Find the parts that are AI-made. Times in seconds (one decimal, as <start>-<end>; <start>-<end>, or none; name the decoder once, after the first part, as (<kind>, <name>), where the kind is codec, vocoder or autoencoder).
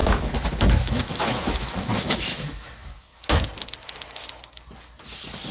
0.0-3.3 (autoencoder, DAC-VAE)